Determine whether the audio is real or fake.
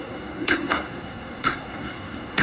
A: fake